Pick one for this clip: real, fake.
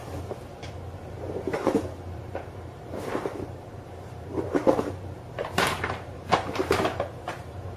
fake